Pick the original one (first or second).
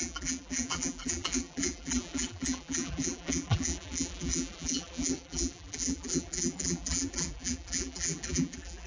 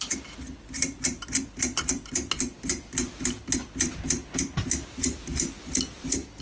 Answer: second